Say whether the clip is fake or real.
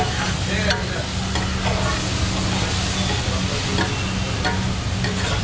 real